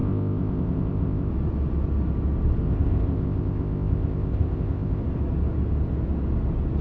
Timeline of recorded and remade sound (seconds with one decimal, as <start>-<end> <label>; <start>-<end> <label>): 0.0-1.3 remade; 1.3-2.6 recorded; 2.6-5.0 remade; 5.0-6.8 recorded